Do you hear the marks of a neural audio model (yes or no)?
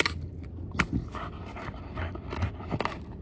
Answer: no